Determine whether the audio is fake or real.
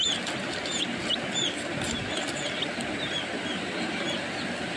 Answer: real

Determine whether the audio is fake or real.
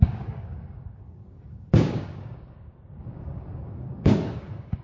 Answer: fake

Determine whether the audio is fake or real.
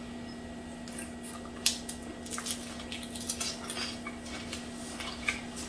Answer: real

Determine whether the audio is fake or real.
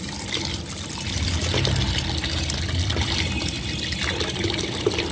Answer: real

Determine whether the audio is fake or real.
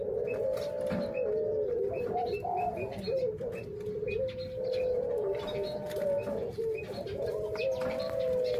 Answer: real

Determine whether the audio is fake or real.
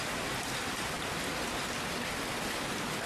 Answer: real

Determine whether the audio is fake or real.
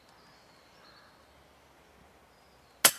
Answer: real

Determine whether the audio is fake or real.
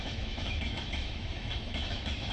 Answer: fake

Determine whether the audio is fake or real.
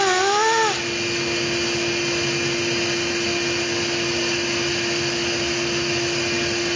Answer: real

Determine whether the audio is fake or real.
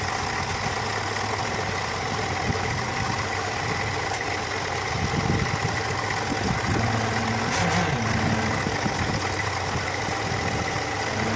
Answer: real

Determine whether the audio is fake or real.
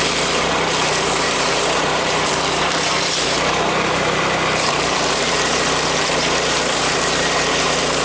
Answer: fake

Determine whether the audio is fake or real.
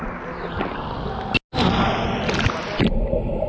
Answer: real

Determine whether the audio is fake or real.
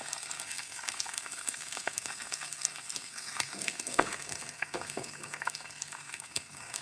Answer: fake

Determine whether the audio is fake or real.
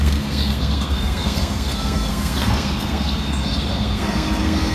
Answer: fake